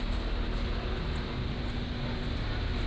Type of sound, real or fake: real